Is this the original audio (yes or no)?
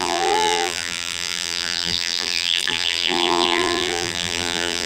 no